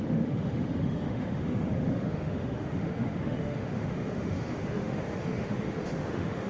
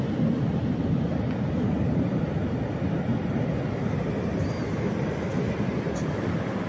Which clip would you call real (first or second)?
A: second